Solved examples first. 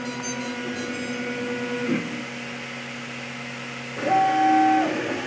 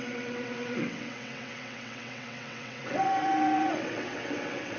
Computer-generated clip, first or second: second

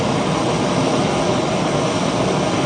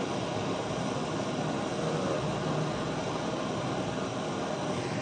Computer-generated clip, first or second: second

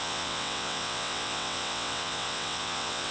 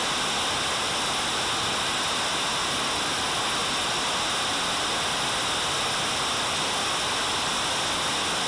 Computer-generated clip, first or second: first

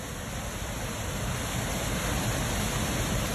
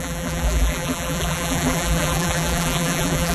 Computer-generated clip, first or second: second